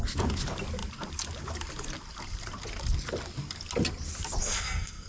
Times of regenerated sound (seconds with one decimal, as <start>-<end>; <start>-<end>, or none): 4.4-5.1